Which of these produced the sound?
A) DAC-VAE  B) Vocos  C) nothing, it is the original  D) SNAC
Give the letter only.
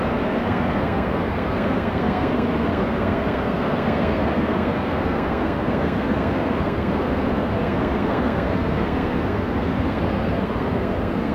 D